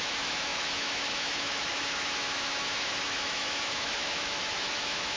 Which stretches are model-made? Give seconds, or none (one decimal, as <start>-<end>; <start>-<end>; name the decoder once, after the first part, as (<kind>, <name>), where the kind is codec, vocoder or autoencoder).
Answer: 0.0-5.2 (autoencoder, DAC-VAE)